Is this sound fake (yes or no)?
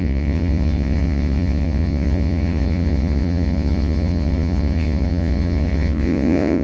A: yes